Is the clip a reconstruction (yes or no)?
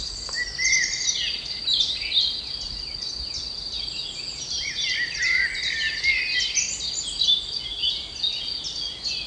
no